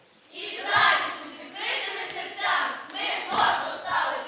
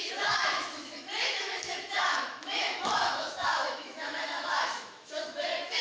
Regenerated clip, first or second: second